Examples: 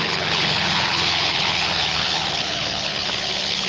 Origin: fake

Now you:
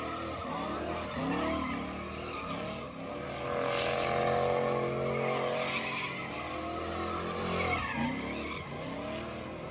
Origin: real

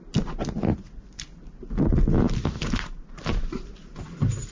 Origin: real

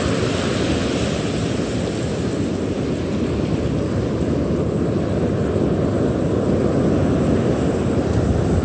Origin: real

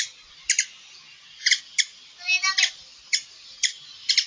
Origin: real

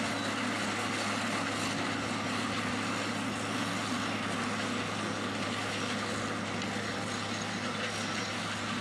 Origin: real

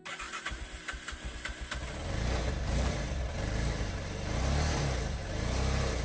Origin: real